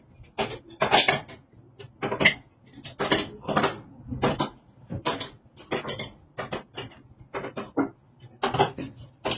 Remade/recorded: recorded